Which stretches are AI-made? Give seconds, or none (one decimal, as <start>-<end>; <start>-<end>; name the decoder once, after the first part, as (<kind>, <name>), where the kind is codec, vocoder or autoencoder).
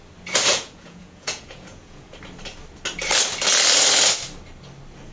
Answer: 0.5-2.2 (vocoder, Vocos)